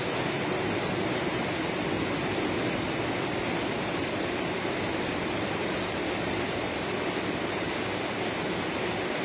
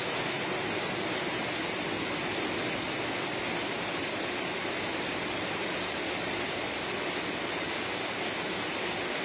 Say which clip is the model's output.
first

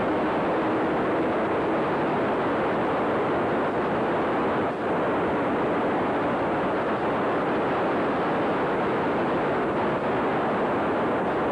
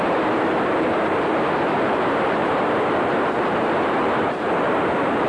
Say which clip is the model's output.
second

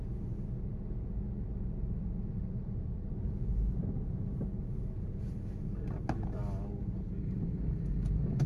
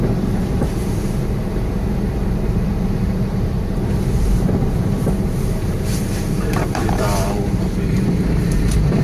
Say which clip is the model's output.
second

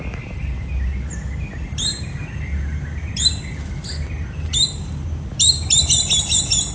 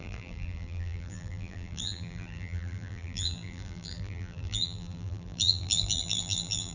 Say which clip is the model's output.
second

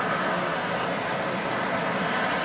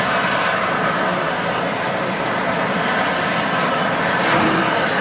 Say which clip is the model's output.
second